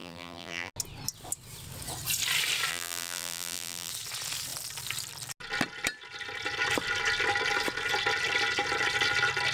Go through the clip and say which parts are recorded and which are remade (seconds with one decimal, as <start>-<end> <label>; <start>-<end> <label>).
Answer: 0.0-0.7 remade; 0.7-2.7 recorded; 2.7-3.9 remade; 3.9-9.5 recorded